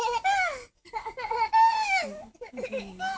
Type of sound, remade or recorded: remade